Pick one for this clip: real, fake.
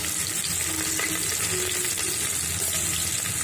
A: real